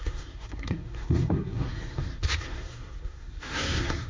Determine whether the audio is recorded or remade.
remade